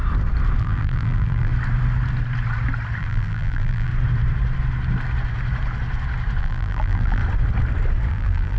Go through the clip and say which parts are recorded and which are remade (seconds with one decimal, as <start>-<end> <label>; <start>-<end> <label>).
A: 0.0-0.6 recorded; 0.6-1.5 remade; 1.5-3.0 recorded; 3.0-3.9 remade; 3.9-6.4 recorded; 6.4-7.2 remade; 7.2-8.1 recorded; 8.1-8.6 remade

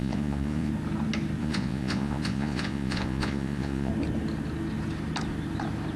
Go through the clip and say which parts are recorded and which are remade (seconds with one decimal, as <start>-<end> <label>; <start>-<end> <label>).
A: 0.0-0.7 remade; 0.7-1.4 recorded; 1.4-3.9 remade; 3.9-6.0 recorded

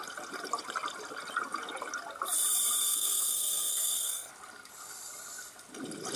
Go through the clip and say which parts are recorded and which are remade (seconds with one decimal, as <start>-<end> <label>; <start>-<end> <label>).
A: 0.0-2.8 recorded; 2.8-4.3 remade; 4.3-6.2 recorded

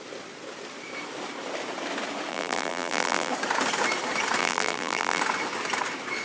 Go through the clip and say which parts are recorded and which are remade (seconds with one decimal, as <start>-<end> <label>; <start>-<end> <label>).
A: 0.0-2.3 recorded; 2.3-3.3 remade; 3.3-4.4 recorded; 4.4-5.2 remade; 5.2-6.2 recorded

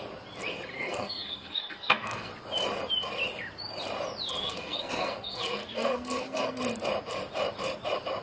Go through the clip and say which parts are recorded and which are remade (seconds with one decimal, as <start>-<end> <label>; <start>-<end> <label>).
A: 0.0-0.7 recorded; 0.7-2.3 remade; 2.3-4.4 recorded; 4.4-6.6 remade; 6.6-8.2 recorded